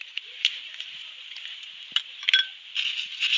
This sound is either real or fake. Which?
real